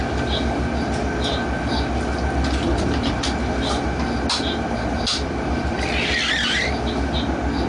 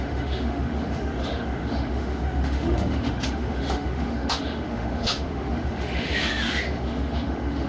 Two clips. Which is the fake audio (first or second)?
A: second